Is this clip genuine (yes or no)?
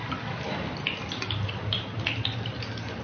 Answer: yes